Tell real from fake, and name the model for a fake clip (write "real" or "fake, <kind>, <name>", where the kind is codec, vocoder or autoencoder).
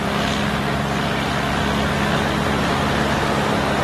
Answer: real